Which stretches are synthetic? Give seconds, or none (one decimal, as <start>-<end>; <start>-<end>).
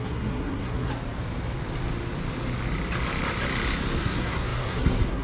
0.0-0.9; 4.0-5.2